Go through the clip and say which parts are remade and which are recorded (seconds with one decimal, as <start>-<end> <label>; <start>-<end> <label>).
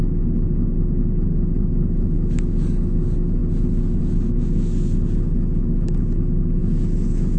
0.0-7.4 recorded